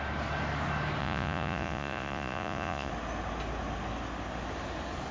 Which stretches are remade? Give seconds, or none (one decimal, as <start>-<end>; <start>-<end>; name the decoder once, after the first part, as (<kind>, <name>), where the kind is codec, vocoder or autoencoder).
1.0-2.9 (vocoder, Vocos)